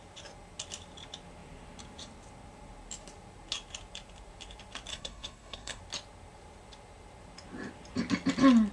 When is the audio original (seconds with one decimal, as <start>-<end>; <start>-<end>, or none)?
0.0-4.9; 5.8-8.7